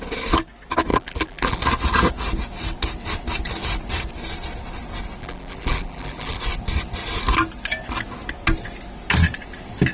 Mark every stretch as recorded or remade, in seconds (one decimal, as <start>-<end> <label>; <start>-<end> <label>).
0.0-0.9 recorded; 0.9-1.6 remade; 1.6-5.2 recorded; 5.2-6.4 remade; 6.4-9.9 recorded